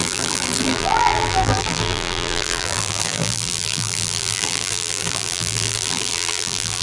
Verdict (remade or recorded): remade